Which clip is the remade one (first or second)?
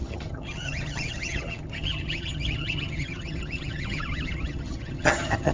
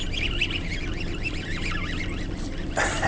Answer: first